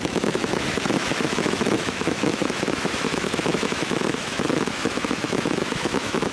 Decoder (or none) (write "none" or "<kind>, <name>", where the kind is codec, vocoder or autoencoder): autoencoder, DAC-VAE